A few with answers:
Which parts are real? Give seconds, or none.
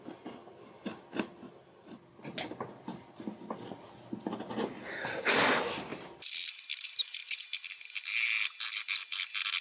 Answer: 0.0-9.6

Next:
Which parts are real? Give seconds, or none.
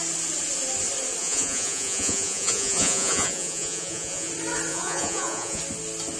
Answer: 0.0-1.2; 4.3-4.7; 5.6-6.2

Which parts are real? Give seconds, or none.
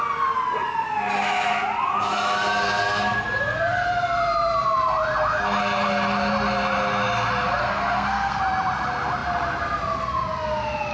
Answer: 0.0-7.6; 8.4-10.9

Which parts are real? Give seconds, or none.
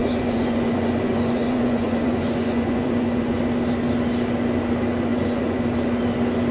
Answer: 3.4-5.1; 5.6-6.5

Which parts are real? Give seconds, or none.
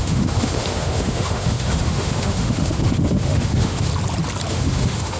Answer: 3.9-4.5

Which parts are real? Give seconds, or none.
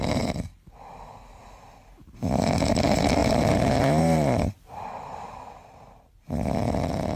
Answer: 0.0-3.2; 4.9-7.2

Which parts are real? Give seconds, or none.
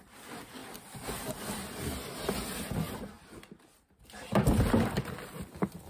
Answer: 0.0-5.9